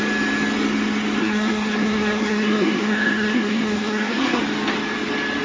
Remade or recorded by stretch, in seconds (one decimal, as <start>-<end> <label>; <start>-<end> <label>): 0.0-1.2 recorded; 1.2-4.4 remade; 4.4-5.4 recorded